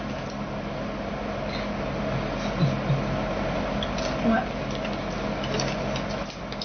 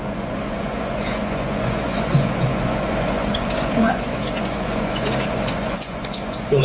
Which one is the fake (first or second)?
second